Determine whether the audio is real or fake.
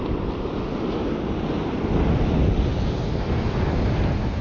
real